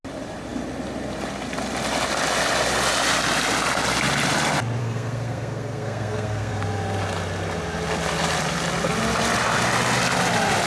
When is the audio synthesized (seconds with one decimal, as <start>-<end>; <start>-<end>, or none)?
4.8-6.5